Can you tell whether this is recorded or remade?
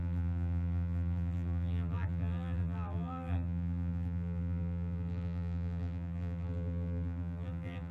remade